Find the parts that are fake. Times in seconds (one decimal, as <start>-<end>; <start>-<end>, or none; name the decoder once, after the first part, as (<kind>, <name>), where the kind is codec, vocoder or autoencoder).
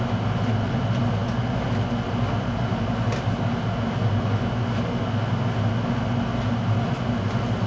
none